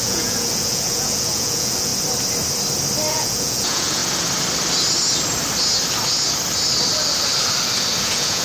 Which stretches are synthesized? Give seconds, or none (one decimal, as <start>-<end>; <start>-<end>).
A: 0.0-1.9; 3.1-4.0; 8.0-8.4